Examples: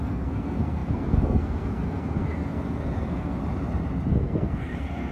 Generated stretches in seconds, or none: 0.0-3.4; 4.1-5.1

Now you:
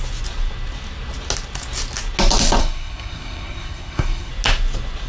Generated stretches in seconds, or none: 2.6-4.3

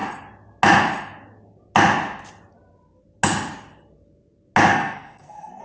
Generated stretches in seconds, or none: 4.7-5.6

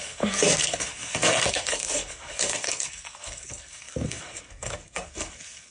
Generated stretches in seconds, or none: 0.0-5.7

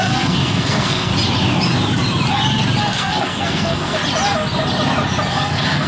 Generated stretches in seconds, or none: 0.0-1.1; 2.8-4.0; 5.3-5.9

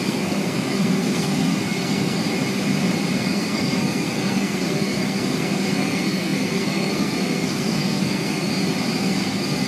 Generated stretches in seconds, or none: 0.0-2.2; 3.1-8.5; 9.0-9.7

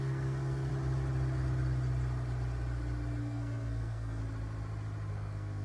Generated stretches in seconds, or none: 0.0-0.7; 3.2-4.2; 5.1-5.6